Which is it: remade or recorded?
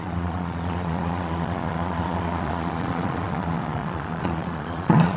remade